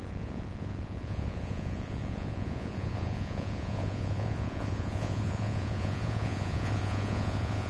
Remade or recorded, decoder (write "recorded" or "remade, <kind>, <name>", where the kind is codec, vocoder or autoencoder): remade, vocoder, Vocos